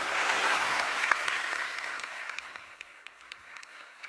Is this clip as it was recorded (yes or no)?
no